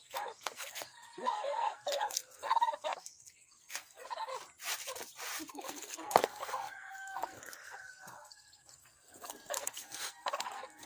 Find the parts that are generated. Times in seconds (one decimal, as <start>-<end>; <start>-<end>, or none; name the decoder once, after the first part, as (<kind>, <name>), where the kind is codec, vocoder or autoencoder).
0.0-4.3 (codec, SNAC); 5.5-10.9